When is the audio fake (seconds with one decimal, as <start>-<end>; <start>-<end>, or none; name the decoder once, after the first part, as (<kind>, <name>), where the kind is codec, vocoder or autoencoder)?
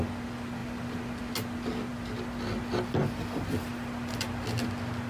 none